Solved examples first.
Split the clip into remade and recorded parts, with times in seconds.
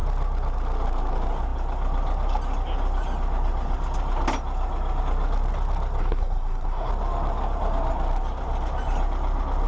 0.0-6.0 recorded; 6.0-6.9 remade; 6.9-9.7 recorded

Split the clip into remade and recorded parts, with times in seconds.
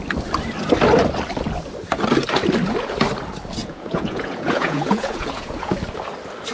0.0-3.6 recorded; 3.6-5.7 remade; 5.7-6.5 recorded